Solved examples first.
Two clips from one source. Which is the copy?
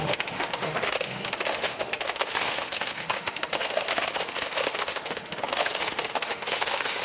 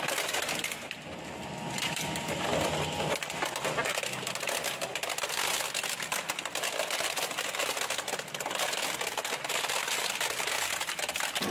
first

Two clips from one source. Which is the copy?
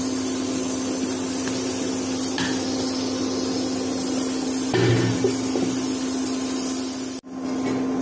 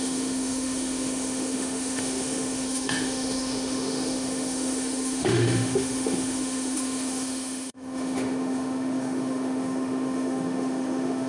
second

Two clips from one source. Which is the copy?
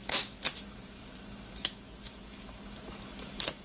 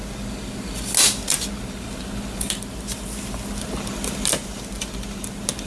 first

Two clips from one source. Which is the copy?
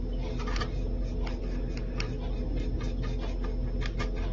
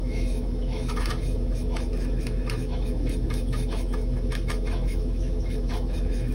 second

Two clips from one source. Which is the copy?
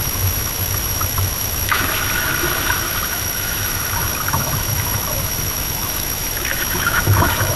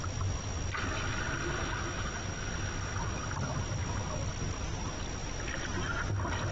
first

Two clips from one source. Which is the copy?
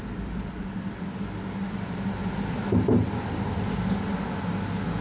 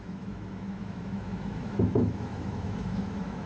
second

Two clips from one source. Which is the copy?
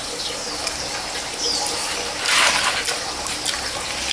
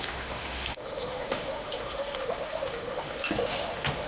second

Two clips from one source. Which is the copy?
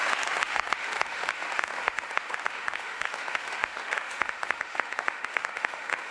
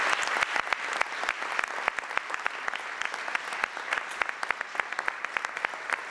first